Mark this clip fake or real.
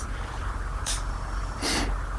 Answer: fake